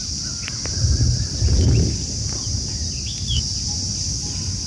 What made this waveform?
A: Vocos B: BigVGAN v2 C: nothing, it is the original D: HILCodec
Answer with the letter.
C